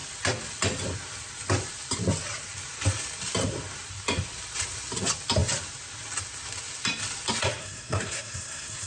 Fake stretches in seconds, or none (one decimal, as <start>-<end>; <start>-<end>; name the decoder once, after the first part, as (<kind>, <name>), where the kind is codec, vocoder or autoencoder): 7.6-8.9 (codec, SNAC)

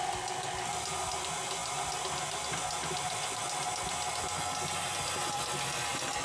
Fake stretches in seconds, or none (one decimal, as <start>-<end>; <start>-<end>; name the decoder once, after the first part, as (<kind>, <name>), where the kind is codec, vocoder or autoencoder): none

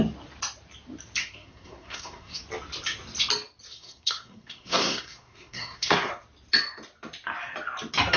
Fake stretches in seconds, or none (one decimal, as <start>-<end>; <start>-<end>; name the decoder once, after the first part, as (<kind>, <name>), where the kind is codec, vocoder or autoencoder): 1.2-2.4 (codec, SNAC); 3.7-6.1

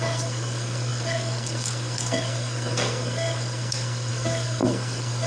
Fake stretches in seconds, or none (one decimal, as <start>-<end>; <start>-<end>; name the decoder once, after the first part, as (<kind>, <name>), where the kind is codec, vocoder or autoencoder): 0.0-5.3 (codec, SNAC)

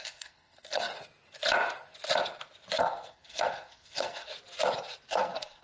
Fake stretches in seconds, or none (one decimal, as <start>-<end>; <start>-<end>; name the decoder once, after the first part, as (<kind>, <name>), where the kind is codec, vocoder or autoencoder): 0.0-0.9 (codec, SNAC); 2.8-4.3; 5.1-5.6

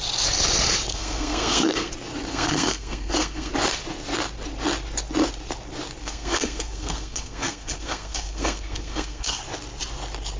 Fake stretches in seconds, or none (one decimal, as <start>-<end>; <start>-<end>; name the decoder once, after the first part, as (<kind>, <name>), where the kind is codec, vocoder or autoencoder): 0.9-1.9 (codec, SNAC); 2.3-3.5; 6.0-9.4

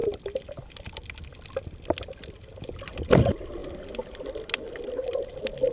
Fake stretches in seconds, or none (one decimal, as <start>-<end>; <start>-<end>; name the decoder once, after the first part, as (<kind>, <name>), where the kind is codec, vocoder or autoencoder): none

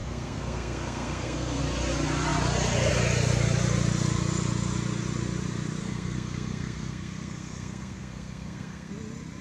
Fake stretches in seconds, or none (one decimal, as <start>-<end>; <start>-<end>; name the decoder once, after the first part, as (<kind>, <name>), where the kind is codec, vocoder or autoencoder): 0.0-1.6 (codec, SNAC); 5.8-8.9